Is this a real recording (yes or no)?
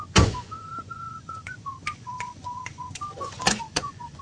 no